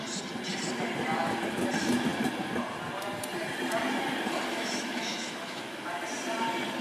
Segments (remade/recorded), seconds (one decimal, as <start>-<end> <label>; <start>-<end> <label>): 0.0-4.5 recorded; 4.5-5.8 remade; 5.8-6.8 recorded